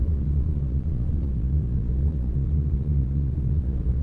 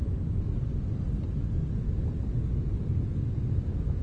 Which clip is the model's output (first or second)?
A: first